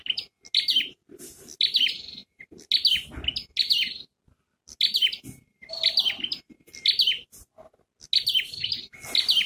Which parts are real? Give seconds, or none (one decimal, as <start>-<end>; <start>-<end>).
0.0-9.5